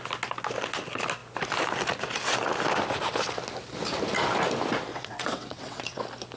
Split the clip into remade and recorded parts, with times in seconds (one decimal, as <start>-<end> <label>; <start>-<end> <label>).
0.0-4.9 recorded; 4.9-6.0 remade; 6.0-6.4 recorded